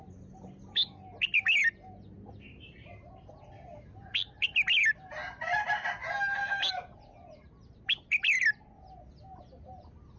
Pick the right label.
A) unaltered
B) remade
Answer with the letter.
A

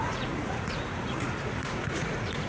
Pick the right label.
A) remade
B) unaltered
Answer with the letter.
A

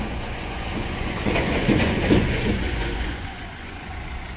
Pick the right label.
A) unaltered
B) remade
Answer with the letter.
B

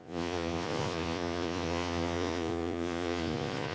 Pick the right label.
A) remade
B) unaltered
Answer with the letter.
A